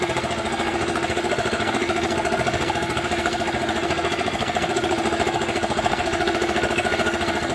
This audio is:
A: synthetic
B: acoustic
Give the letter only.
A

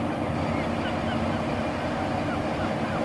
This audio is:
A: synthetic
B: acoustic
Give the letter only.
B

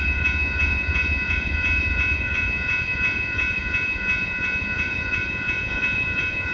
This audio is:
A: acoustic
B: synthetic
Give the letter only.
B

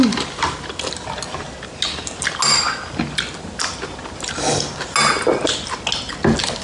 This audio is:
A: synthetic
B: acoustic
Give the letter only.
B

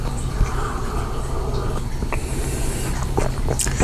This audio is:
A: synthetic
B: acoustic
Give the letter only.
B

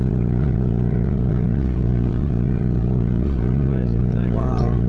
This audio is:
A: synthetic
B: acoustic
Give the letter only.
A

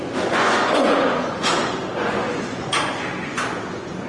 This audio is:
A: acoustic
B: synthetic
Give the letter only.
B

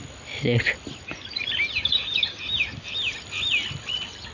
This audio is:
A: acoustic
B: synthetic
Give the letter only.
A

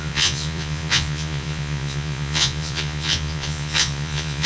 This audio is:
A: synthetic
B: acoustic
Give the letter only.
A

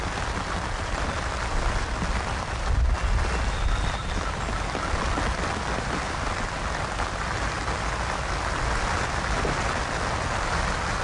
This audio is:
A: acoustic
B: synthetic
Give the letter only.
A